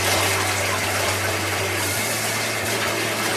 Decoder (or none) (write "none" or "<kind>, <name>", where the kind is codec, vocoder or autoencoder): none